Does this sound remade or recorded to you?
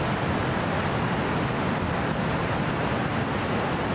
recorded